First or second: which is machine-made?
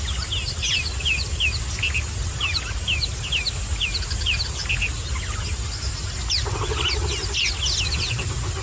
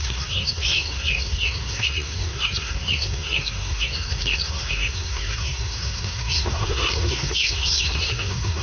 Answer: second